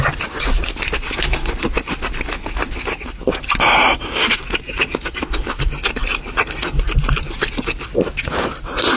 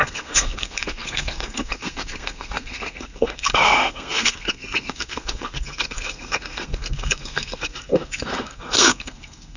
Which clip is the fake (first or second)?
second